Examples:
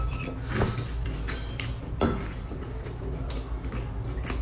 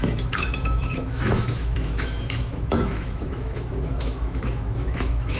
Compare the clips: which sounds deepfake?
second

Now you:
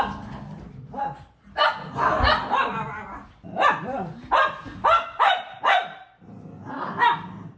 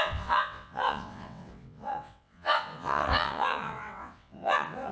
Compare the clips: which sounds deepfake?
second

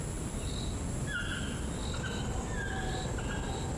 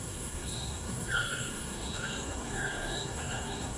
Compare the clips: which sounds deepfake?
second